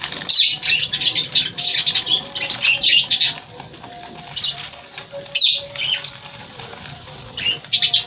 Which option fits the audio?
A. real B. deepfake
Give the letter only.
A